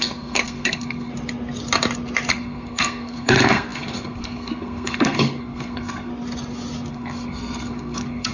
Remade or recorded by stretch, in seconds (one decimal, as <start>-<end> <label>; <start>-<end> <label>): 0.0-1.1 remade; 1.1-2.3 recorded; 2.3-6.1 remade; 6.1-6.9 recorded; 6.9-8.3 remade